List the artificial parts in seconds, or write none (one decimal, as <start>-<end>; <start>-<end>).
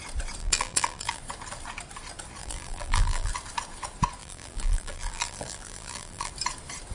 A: 0.4-1.2; 2.4-3.3; 4.2-6.3